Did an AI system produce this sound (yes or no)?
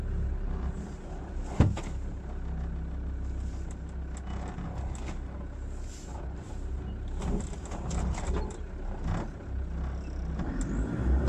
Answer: no